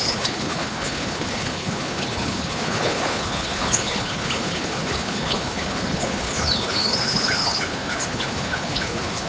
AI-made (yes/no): yes